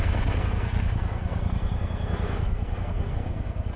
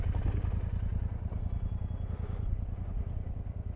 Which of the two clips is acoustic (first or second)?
second